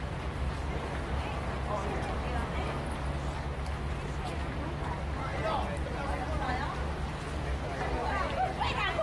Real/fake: real